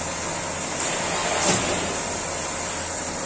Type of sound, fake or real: real